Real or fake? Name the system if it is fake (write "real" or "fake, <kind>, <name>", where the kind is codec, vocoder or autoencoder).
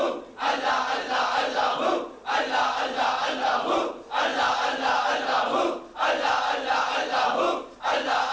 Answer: real